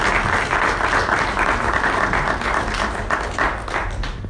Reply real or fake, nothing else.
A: real